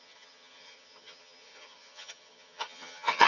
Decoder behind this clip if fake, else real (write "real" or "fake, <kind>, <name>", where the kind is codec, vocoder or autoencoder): fake, vocoder, HiFi-GAN